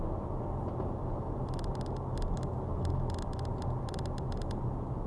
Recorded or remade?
recorded